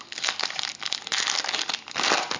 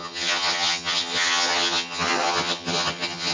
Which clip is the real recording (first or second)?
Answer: first